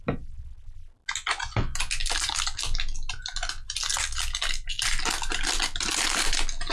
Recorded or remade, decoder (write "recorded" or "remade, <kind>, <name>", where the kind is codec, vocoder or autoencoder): recorded